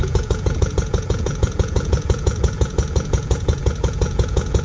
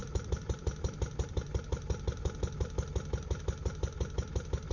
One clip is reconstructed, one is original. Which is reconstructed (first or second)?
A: first